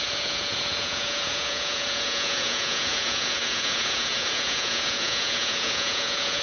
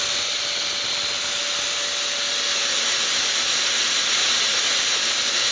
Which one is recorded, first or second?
second